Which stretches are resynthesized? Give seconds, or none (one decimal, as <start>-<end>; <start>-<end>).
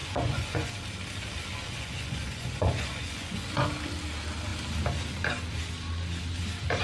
0.0-0.7; 1.5-3.6